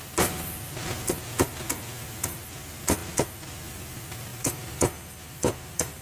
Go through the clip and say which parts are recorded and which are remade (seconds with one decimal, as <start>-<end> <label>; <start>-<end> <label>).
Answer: 0.0-4.3 recorded; 4.3-6.0 remade